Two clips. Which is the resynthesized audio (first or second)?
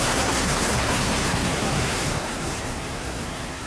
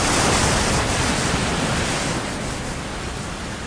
first